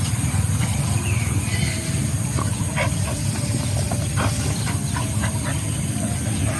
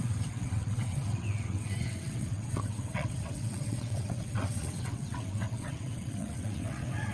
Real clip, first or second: first